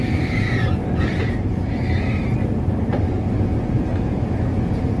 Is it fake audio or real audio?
real